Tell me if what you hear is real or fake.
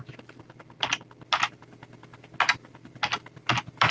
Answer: real